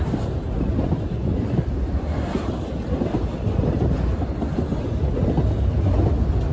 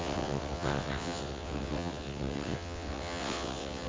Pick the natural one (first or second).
first